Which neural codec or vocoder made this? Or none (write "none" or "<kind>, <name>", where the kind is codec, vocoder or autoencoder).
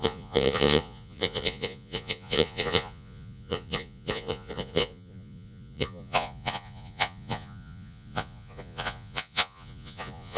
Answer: vocoder, Vocos